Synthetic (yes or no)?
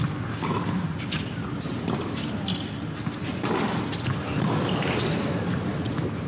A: no